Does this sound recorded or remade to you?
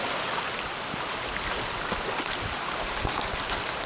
recorded